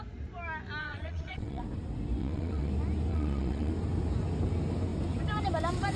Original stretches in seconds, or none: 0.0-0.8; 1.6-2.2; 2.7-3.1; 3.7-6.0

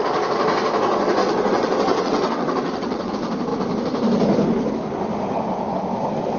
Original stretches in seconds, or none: 0.0-1.2; 3.1-6.4

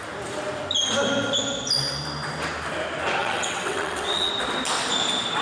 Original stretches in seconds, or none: 0.0-3.2; 4.3-5.4

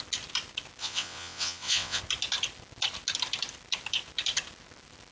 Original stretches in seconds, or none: 0.0-0.8; 2.0-5.1

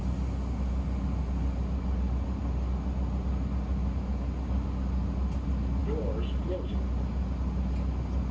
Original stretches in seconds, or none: 0.0-8.3

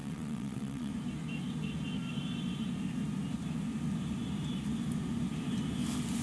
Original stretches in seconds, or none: 0.9-6.2

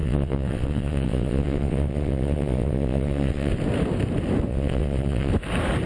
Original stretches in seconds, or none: 3.5-4.5; 5.3-5.9